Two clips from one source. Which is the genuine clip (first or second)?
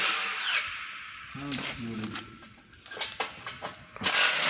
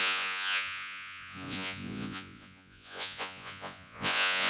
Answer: first